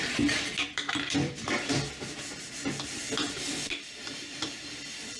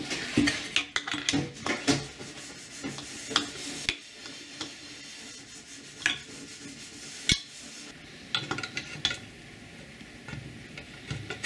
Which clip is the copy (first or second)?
first